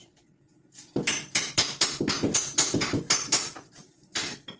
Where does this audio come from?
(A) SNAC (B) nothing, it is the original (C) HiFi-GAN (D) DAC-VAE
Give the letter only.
B